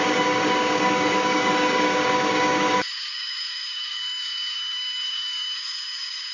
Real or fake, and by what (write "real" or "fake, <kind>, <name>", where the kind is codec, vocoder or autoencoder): fake, codec, DAC